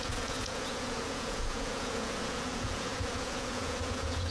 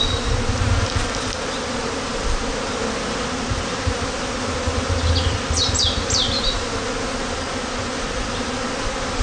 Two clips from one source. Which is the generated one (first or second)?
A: first